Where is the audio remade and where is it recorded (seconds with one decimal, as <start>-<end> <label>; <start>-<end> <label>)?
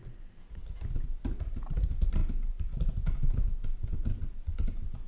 0.0-5.1 recorded